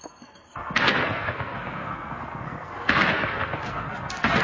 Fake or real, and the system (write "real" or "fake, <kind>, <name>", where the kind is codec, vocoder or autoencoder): fake, codec, SNAC